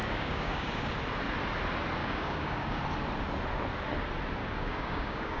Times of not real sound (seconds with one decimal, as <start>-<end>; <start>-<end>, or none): 0.0-0.9; 2.0-2.8; 4.4-5.4